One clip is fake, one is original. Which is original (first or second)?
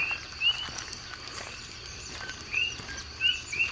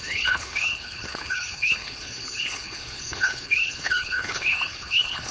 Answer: first